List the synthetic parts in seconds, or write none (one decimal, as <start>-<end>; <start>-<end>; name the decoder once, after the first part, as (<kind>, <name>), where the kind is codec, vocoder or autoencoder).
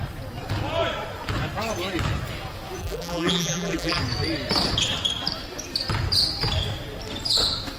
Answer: 2.8-4.0 (vocoder, BigVGAN v2)